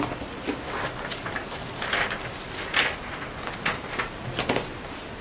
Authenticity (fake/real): real